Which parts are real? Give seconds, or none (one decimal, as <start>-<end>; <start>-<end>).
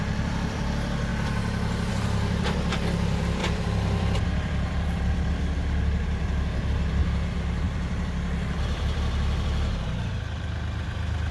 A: 1.1-1.9